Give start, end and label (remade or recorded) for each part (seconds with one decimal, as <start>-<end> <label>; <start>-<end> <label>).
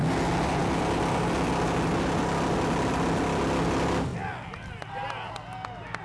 0.0-6.0 recorded